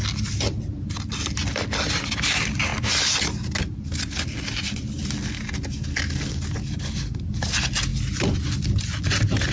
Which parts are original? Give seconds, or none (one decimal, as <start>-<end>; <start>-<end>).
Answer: 0.0-9.5